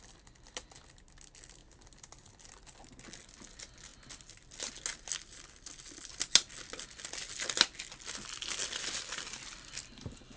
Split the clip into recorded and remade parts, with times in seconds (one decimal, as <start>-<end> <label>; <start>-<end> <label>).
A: 0.0-10.4 recorded